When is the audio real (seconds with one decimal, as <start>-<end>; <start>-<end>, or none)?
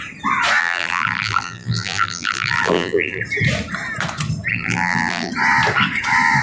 0.0-0.6; 3.2-4.5; 5.3-6.4